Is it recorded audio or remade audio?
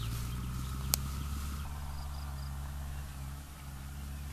recorded